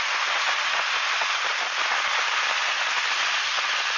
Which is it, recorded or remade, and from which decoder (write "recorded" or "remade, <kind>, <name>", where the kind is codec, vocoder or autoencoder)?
recorded